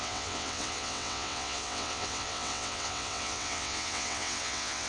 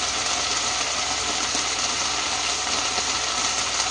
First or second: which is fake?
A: first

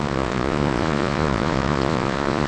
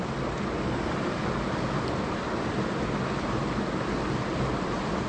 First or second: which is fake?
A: first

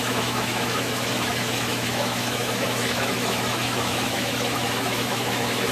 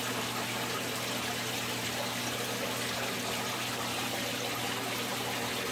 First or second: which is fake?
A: first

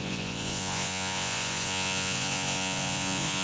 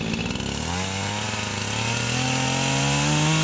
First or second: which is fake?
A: first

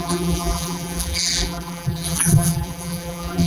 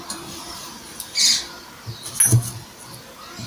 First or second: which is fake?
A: first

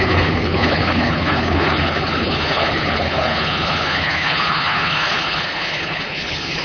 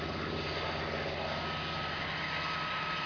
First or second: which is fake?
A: first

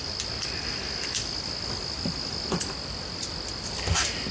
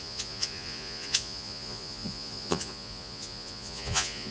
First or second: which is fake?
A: second